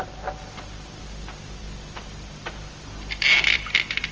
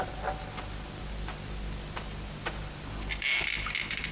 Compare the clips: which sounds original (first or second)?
second